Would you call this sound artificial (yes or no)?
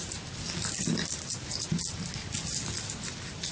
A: no